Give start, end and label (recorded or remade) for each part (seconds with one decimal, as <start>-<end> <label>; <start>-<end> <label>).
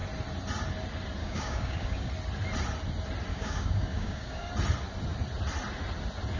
0.0-1.2 recorded; 1.2-2.1 remade; 2.1-3.3 recorded; 3.3-4.5 remade; 4.5-6.4 recorded